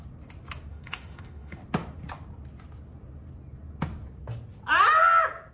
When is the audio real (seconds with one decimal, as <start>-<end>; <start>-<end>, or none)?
0.0-0.7; 1.6-5.5

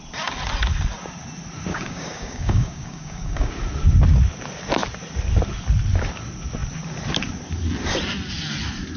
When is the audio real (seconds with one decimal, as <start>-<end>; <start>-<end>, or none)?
0.0-1.7; 3.5-9.0